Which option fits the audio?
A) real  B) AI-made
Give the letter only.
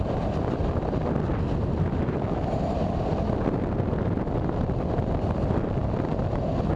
A